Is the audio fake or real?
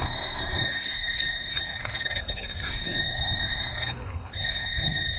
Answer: fake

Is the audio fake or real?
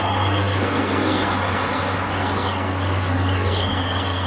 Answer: fake